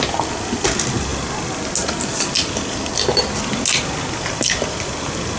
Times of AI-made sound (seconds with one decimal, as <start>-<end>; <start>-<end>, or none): none